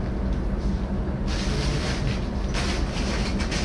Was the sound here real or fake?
real